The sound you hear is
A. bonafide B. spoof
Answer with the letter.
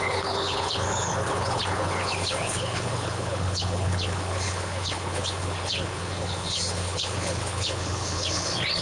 B